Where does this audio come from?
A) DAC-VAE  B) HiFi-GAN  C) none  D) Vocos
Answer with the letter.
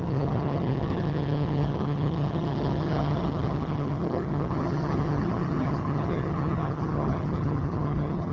B